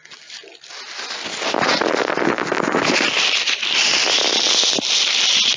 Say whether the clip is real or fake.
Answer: real